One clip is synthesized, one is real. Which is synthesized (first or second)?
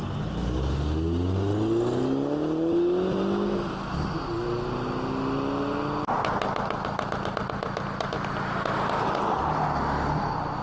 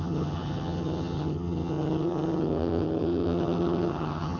second